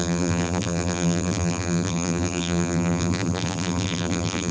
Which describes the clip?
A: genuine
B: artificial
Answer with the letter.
B